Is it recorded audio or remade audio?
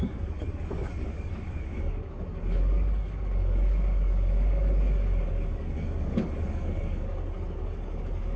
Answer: remade